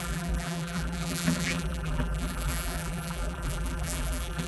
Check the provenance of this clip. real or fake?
fake